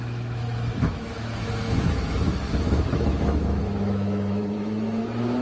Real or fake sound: fake